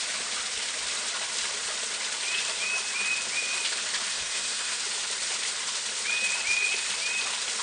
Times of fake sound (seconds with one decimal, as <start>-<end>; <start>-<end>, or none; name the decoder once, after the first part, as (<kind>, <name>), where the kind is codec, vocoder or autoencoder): 4.1-4.8 (codec, SNAC)